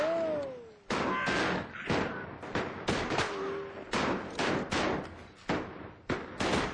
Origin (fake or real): real